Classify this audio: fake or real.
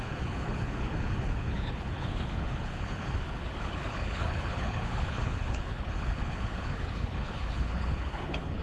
fake